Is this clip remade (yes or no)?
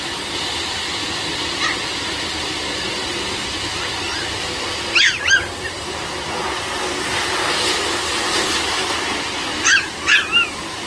no